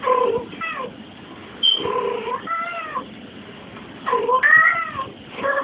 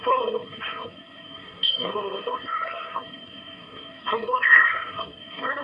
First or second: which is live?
first